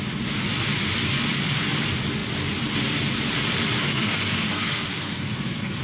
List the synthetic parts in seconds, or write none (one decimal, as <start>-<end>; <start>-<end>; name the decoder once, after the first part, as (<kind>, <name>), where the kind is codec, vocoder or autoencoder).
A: 3.9-5.8 (codec, SNAC)